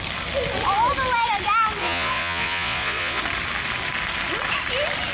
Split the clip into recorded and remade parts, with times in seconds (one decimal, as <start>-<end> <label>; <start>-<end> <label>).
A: 0.0-1.8 recorded; 1.8-3.2 remade; 3.2-5.1 recorded